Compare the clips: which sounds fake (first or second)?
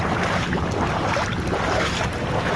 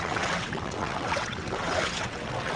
second